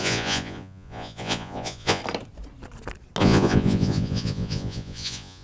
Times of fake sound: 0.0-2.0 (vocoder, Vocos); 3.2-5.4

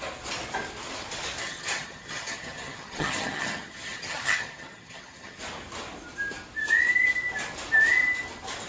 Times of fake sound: 1.4-5.4 (vocoder, HiFi-GAN)

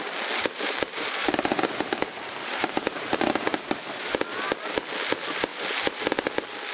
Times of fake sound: 0.4-4.2 (vocoder, BigVGAN v2); 5.5-6.3